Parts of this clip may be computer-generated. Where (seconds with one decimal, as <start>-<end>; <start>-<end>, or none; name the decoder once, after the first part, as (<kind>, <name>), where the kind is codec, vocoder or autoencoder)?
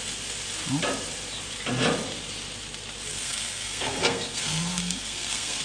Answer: 3.1-5.6 (codec, SNAC)